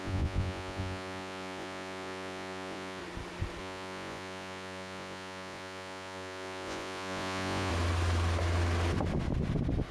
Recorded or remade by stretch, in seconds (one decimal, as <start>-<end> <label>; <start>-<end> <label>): 0.0-3.0 remade; 3.0-3.6 recorded; 3.6-7.7 remade; 7.7-9.9 recorded